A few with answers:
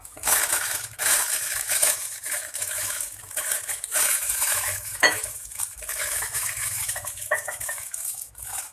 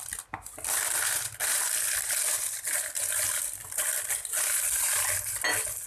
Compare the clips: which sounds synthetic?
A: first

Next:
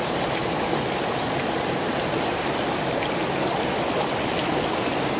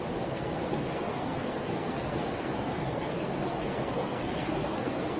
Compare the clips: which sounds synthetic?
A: second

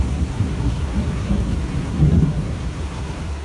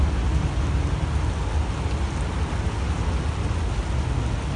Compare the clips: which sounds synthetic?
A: first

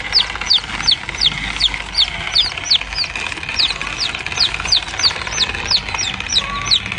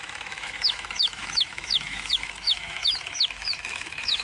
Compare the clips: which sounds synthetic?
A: second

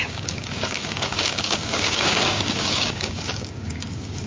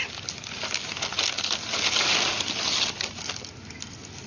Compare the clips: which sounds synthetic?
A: first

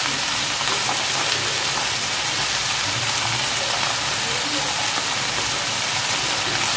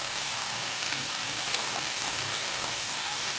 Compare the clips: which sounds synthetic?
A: second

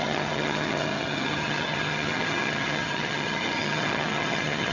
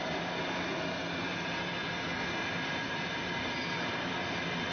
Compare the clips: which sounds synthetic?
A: first